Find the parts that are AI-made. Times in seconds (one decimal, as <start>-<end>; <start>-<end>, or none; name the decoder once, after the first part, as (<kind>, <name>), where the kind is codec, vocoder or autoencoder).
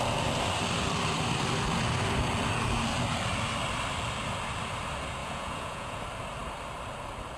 5.2-6.0 (vocoder, Vocos)